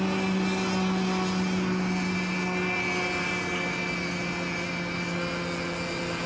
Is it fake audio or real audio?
real